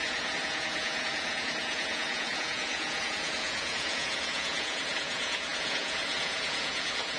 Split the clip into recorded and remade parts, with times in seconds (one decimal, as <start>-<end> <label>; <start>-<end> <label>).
0.0-7.2 remade

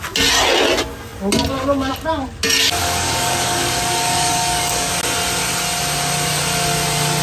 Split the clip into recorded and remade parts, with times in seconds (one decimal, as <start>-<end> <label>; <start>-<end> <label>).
0.0-2.8 recorded; 2.8-4.9 remade; 4.9-7.2 recorded

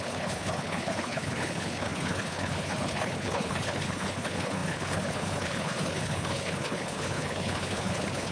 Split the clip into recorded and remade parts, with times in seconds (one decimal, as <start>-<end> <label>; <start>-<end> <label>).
0.0-8.3 remade

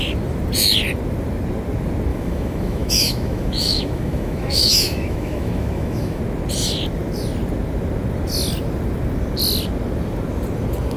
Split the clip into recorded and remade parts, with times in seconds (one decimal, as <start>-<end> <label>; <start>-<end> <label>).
0.0-2.1 recorded; 2.1-6.2 remade; 6.2-11.0 recorded

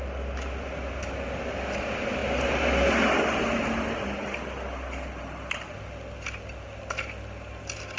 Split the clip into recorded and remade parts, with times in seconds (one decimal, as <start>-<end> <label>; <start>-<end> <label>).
0.0-8.0 recorded

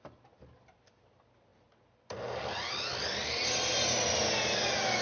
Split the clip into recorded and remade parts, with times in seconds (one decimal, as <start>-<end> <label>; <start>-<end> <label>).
0.0-5.0 recorded

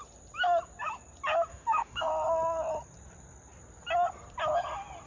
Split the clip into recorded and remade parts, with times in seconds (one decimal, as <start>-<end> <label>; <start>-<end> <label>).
0.0-1.5 recorded; 1.5-2.1 remade; 2.1-5.1 recorded

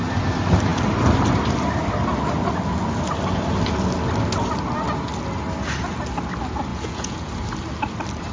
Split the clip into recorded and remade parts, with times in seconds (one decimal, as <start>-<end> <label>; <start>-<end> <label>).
0.0-6.7 recorded; 6.7-7.3 remade; 7.3-8.3 recorded